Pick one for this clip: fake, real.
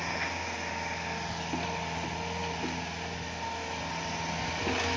real